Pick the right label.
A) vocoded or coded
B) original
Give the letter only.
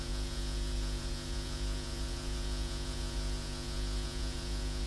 A